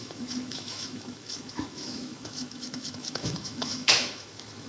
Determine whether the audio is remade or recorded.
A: remade